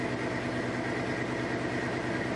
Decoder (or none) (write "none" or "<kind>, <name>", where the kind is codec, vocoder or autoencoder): none